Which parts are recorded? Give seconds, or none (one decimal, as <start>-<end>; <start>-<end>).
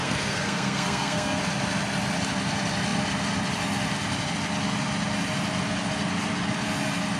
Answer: 1.4-7.2